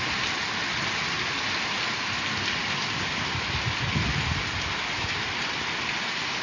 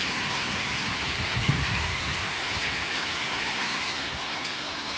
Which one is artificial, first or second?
second